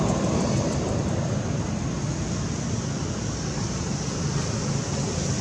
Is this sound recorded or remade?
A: recorded